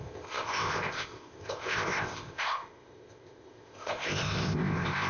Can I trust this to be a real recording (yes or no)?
no